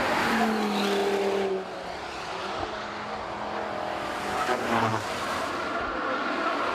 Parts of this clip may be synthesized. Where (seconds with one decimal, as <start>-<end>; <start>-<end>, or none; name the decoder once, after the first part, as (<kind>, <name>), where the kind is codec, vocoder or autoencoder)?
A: 4.9-5.5 (vocoder, BigVGAN v2)